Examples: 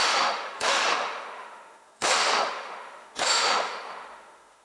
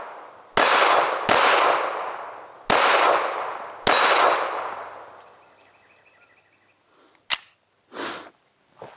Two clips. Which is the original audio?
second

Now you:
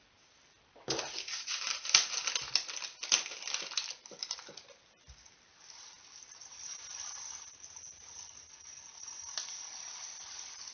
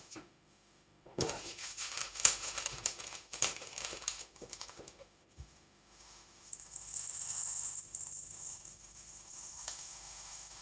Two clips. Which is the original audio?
first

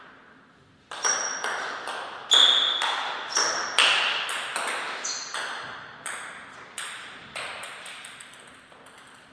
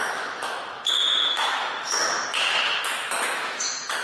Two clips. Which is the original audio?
first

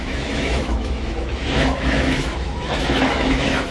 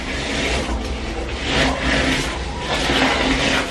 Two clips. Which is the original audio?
second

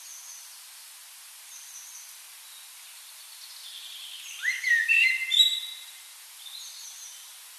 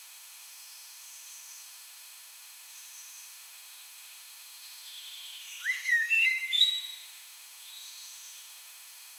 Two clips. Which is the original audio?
first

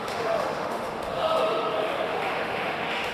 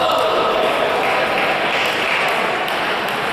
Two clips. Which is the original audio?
second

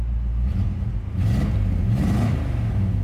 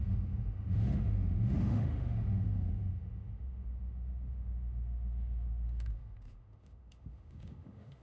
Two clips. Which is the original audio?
first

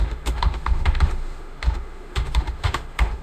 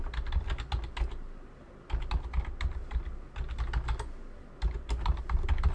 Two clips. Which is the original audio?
second